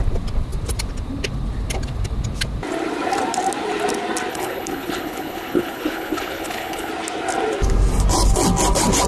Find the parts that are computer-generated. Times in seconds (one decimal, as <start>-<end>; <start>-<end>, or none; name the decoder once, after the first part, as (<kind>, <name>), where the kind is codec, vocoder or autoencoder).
4.3-6.9 (codec, HILCodec)